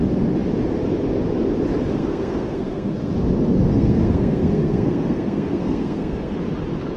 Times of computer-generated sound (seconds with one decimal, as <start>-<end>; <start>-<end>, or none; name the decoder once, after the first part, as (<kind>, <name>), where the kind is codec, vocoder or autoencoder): 2.0-3.1 (codec, SNAC); 3.7-6.3